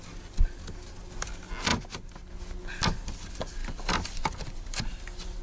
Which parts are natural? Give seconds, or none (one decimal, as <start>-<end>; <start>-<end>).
0.0-3.6

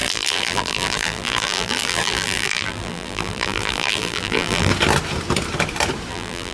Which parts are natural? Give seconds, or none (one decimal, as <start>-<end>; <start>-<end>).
4.7-6.1

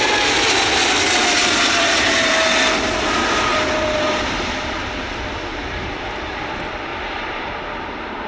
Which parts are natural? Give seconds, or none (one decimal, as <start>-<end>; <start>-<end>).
0.0-1.4; 2.1-3.5; 4.8-5.5; 6.5-6.9; 7.5-8.3

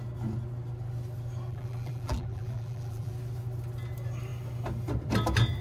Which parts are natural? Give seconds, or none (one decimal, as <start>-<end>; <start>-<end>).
0.0-1.5; 3.1-5.6

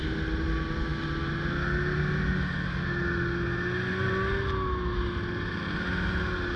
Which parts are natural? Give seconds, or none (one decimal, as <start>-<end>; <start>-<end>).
0.0-6.6

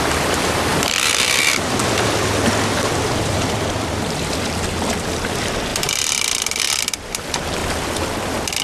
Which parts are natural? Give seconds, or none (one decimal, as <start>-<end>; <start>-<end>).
7.6-8.2